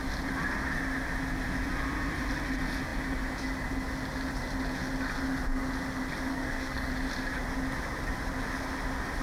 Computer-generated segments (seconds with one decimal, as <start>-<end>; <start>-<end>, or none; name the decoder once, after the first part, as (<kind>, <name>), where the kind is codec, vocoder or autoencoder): 6.3-6.9 (codec, SNAC)